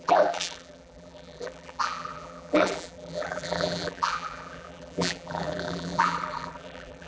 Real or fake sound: fake